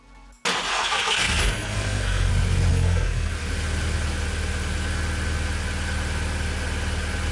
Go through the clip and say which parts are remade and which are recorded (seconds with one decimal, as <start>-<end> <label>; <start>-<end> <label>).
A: 0.0-0.7 recorded; 0.7-2.3 remade; 2.3-2.7 recorded; 2.7-3.3 remade; 3.3-7.3 recorded